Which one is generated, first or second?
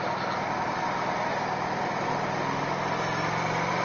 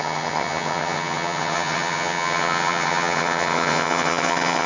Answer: second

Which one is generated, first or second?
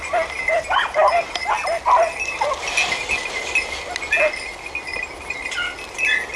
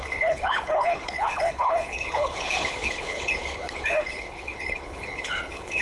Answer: second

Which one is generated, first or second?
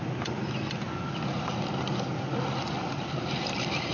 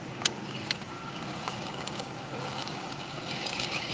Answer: second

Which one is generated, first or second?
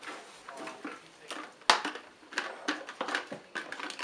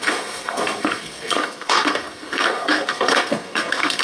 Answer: second